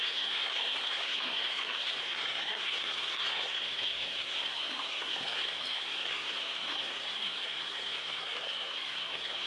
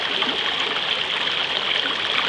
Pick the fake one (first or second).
first